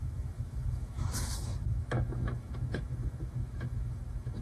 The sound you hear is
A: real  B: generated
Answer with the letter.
B